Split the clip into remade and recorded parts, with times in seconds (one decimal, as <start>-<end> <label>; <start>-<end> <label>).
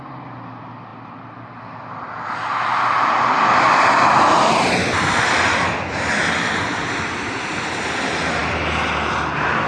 0.0-9.7 recorded